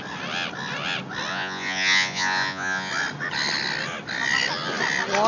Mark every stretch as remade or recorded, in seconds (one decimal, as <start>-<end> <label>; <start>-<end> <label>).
0.0-1.3 recorded; 1.3-2.9 remade; 2.9-5.3 recorded